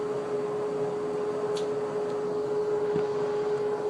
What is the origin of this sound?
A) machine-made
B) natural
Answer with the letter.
B